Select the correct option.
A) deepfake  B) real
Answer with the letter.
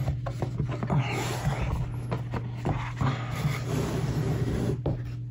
B